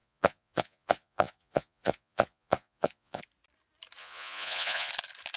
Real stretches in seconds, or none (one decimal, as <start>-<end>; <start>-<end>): 3.2-4.0; 4.9-5.4